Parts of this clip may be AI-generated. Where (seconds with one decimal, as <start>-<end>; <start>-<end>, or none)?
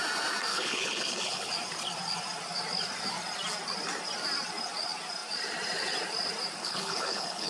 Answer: 0.5-1.5; 6.6-7.5